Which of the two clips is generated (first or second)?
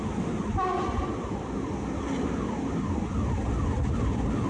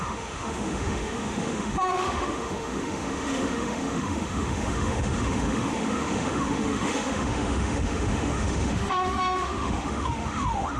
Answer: second